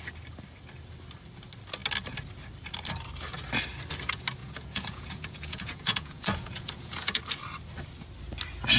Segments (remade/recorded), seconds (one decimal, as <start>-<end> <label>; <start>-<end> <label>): 0.0-4.4 recorded; 4.4-7.2 remade; 7.2-8.8 recorded